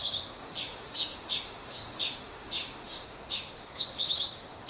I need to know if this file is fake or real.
fake